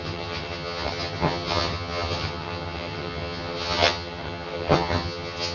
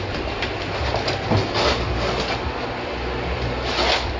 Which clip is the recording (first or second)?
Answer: second